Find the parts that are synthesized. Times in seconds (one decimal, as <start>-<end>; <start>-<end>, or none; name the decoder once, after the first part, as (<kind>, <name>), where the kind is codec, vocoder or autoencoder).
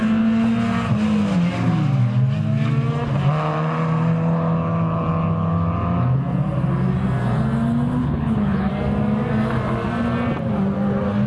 8.0-8.7 (codec, HILCodec)